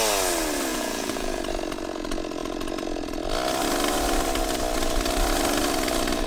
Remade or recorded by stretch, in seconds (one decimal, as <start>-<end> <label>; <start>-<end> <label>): 0.0-0.7 recorded; 0.7-1.4 remade; 1.4-6.3 recorded